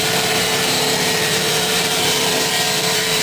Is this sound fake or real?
fake